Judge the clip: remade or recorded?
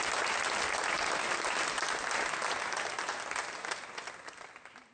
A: recorded